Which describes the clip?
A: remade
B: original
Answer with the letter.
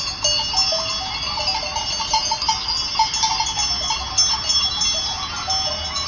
B